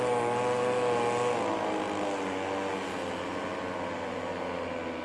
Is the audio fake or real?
real